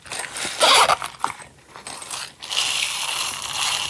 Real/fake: real